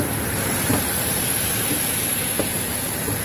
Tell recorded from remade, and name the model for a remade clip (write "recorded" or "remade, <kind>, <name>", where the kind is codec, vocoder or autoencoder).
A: remade, vocoder, BigVGAN v2